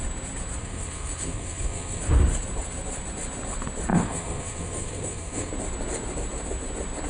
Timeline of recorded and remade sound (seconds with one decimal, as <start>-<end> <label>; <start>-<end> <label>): 0.0-0.6 recorded; 0.6-2.0 remade; 2.0-3.9 recorded; 3.9-5.5 remade; 5.5-7.1 recorded